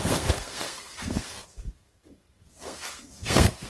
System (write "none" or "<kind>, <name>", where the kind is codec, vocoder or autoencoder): codec, SNAC